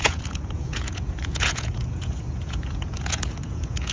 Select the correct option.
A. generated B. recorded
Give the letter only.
A